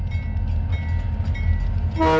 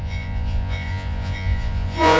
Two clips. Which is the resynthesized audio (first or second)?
second